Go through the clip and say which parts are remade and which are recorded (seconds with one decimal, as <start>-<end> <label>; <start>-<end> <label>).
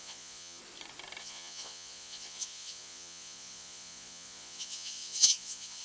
0.0-0.6 remade; 0.6-1.2 recorded; 1.2-5.8 remade